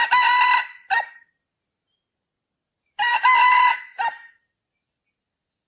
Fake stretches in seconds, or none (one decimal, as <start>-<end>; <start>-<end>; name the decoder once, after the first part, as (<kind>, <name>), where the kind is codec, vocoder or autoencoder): none